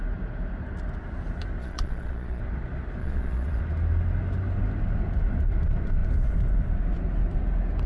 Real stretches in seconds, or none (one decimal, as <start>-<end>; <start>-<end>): 0.0-1.6; 2.4-3.0; 3.6-7.9